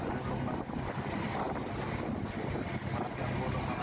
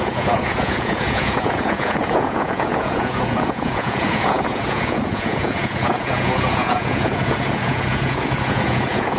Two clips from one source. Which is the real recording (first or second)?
first